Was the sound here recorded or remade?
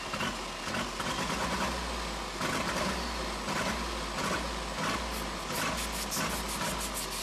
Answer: recorded